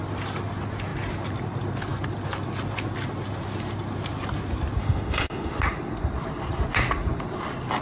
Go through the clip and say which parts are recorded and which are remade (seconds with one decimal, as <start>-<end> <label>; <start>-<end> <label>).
0.0-4.8 recorded; 4.8-5.5 remade; 5.5-7.8 recorded